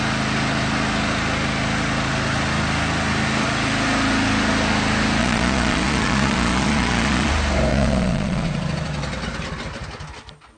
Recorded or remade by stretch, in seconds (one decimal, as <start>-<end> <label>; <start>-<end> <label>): 0.0-5.2 recorded; 5.2-7.3 remade; 7.3-7.7 recorded; 7.7-8.5 remade; 8.5-10.6 recorded

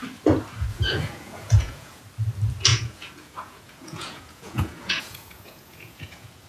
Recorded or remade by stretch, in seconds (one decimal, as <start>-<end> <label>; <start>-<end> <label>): 0.0-0.7 recorded; 0.7-2.0 remade; 2.0-2.7 recorded; 2.7-6.5 remade

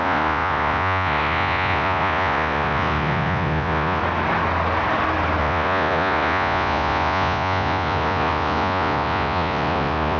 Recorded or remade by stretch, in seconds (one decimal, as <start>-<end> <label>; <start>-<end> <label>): 0.0-4.0 remade; 4.0-5.4 recorded; 5.4-10.2 remade

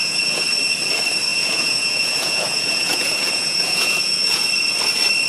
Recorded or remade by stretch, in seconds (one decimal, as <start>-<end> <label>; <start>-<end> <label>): 0.0-0.5 remade; 0.5-1.3 recorded; 1.3-4.5 remade; 4.5-5.3 recorded

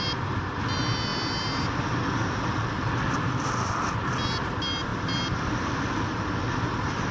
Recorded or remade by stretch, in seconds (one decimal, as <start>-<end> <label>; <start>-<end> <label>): 0.0-7.1 recorded

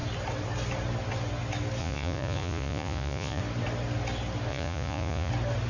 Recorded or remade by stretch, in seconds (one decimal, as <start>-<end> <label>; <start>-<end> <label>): 0.0-1.8 recorded; 1.8-3.4 remade; 3.4-4.5 recorded; 4.5-5.3 remade; 5.3-5.7 recorded